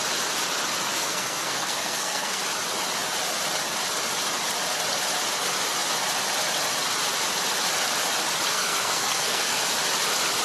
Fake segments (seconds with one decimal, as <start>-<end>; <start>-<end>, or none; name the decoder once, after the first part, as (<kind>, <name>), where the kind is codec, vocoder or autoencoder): 0.9-2.4 (codec, SNAC); 8.5-9.6